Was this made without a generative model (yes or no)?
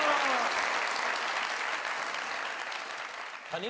yes